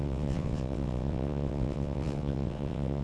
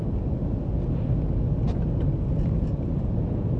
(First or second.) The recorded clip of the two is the second